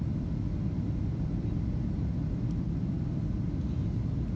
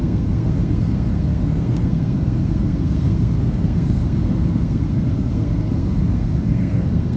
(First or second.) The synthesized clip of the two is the second